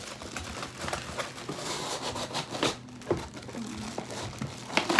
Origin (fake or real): fake